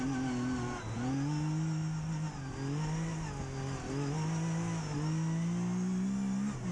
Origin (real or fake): real